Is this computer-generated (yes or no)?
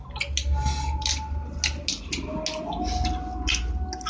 no